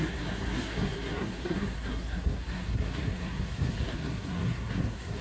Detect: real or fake fake